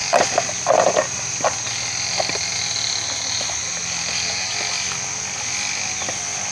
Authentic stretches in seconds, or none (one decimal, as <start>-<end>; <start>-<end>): 0.0-6.5